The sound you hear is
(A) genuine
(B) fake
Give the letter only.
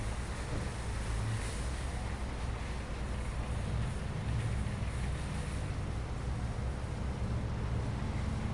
A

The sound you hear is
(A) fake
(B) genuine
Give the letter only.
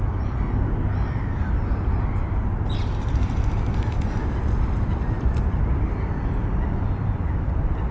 B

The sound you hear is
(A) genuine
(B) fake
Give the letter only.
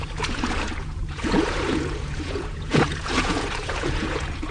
B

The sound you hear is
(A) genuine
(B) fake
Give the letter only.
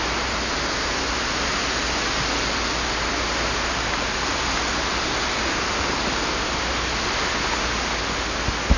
A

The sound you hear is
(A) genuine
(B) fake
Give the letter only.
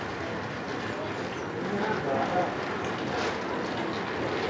A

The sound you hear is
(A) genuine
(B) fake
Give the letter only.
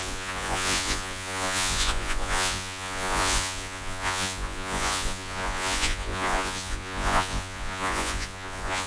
B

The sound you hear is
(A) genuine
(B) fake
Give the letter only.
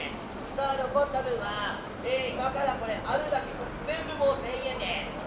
A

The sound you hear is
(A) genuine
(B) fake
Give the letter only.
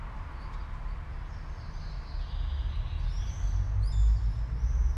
A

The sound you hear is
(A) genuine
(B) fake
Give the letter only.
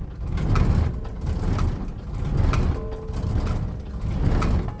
A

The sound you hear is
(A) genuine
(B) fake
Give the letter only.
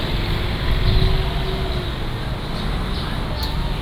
A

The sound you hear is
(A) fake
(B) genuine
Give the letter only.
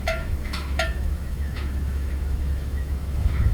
A